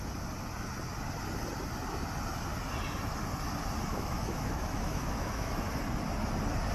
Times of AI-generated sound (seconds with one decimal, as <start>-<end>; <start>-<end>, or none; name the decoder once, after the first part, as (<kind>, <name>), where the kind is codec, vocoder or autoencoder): 3.9-5.7 (autoencoder, DAC-VAE)

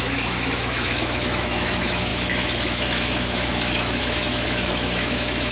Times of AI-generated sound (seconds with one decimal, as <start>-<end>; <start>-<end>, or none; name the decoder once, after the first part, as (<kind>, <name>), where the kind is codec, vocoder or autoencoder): 0.0-5.5 (autoencoder, DAC-VAE)

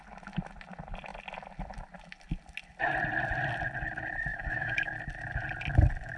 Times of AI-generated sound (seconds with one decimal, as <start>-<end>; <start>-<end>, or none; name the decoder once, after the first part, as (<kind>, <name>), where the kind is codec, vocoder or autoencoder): 4.3-4.9 (autoencoder, DAC-VAE)

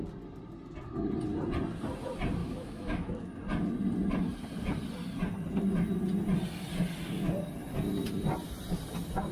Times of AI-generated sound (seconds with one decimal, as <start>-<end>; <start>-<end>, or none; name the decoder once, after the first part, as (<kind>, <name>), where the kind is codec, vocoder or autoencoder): 2.4-3.3 (autoencoder, DAC-VAE)

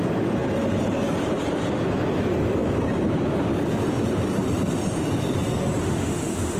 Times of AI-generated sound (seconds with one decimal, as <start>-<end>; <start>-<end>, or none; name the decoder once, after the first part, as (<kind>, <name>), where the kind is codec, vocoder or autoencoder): 5.8-6.6 (autoencoder, DAC-VAE)